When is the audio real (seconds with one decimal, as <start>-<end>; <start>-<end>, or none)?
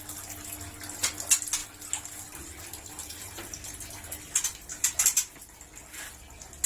0.0-6.7